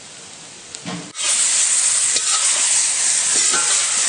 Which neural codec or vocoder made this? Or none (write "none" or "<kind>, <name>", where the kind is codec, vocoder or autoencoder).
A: none